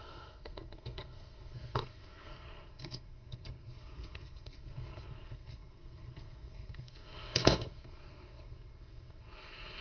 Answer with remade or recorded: remade